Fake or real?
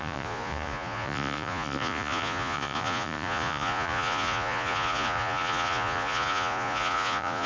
fake